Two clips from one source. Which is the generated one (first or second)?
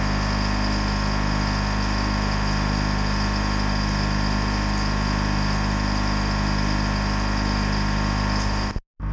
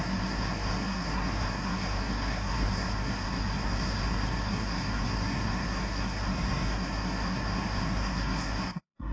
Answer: second